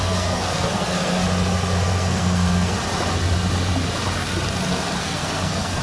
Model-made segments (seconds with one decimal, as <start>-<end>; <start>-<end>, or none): 0.0-1.2; 1.8-2.8; 5.0-5.8